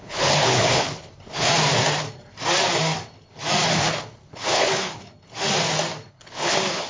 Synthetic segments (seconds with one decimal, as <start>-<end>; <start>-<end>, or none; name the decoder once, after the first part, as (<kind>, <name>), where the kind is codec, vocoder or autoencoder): 0.0-1.5 (codec, HILCodec); 3.7-5.0; 6.1-6.9